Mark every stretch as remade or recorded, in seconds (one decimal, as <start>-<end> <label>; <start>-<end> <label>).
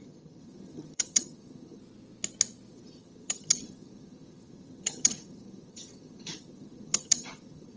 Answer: 0.0-1.8 remade; 1.8-2.7 recorded; 2.7-7.8 remade